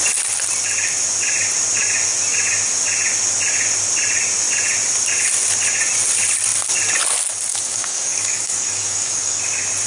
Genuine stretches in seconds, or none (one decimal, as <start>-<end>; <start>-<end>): 0.0-7.5; 9.4-9.9